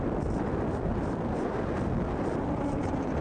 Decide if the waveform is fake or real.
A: fake